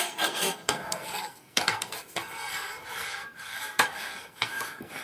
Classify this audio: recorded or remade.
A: remade